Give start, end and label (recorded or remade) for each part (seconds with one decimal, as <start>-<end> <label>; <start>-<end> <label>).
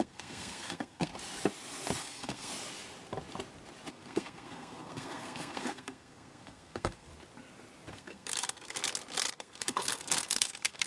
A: 0.0-1.1 remade; 1.1-2.0 recorded; 2.0-2.5 remade; 2.5-3.9 recorded; 3.9-7.1 remade; 7.1-7.9 recorded; 7.9-8.8 remade; 8.8-9.3 recorded; 9.3-10.9 remade